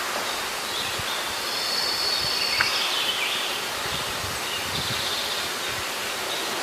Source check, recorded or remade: recorded